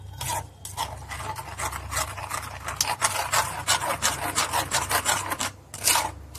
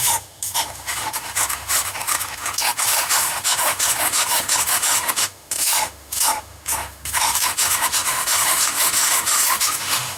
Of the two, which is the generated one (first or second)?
second